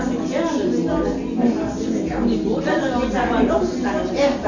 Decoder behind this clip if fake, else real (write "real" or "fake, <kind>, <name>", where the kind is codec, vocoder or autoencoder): real